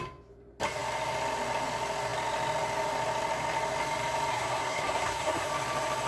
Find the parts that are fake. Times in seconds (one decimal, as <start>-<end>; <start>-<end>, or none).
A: 4.3-5.5

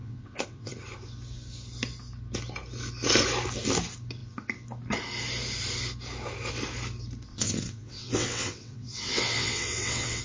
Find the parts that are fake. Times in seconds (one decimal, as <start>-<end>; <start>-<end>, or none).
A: 0.0-0.7; 7.3-10.2

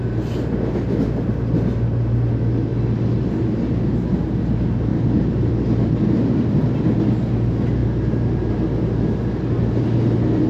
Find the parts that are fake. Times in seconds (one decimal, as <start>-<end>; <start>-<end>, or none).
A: 2.7-3.6; 4.9-6.6

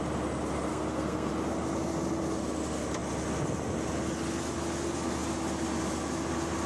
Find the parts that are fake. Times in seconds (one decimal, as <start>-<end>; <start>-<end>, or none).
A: 0.7-1.3

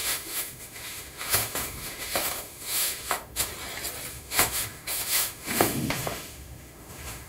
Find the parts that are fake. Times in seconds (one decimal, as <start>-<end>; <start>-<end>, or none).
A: 0.0-3.5; 4.1-7.3

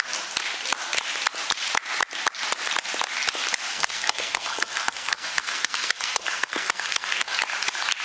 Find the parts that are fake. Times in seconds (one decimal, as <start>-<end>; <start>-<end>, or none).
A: 3.7-7.4

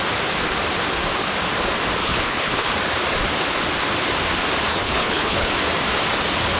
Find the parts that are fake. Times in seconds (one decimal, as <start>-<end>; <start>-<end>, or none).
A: 2.0-2.7; 4.7-5.5

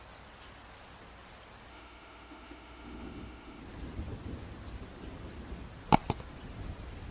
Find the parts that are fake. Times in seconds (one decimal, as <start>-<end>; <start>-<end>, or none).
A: 1.7-3.6